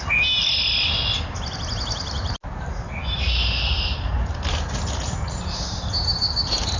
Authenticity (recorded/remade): recorded